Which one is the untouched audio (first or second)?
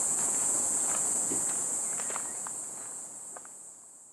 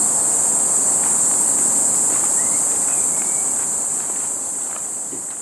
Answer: second